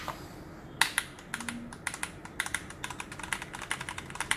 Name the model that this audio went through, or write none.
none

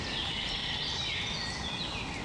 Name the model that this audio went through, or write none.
none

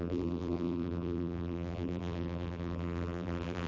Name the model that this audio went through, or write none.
vocoder, BigVGAN v2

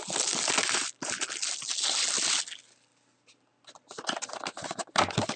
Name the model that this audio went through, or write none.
none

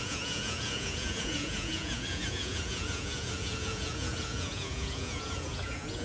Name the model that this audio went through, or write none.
vocoder, Vocos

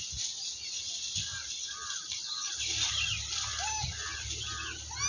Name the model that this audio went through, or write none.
none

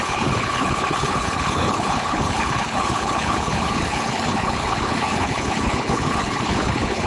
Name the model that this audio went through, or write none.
codec, HILCodec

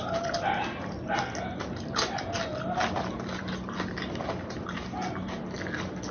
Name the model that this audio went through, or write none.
none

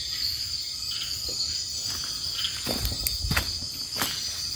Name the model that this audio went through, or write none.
none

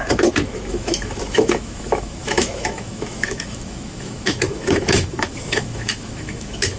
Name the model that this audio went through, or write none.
autoencoder, DAC-VAE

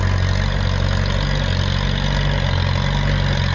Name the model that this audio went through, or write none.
none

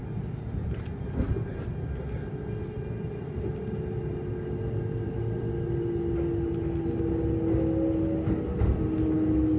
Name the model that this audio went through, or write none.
none